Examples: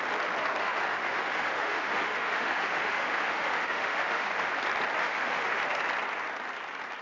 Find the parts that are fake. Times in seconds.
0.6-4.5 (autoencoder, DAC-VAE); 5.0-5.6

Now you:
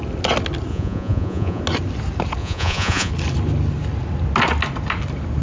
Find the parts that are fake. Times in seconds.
0.7-1.6 (vocoder, Vocos); 2.4-3.1

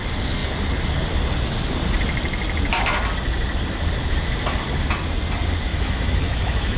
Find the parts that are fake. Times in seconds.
5.7-6.8 (autoencoder, DAC-VAE)

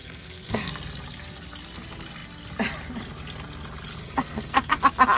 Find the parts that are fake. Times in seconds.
0.0-0.7 (codec, SNAC); 4.0-4.8

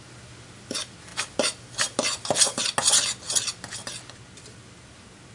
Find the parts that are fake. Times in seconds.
none

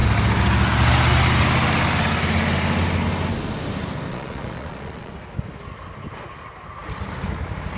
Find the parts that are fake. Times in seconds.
4.1-5.1 (vocoder, Vocos)

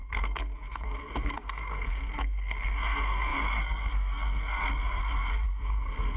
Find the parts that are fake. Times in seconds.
0.0-6.2 (codec, SNAC)